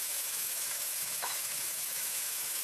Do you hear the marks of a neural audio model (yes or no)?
yes